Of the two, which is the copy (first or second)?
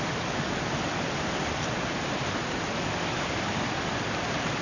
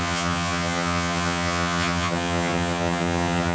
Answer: second